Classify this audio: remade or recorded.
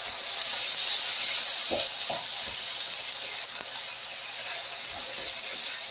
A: recorded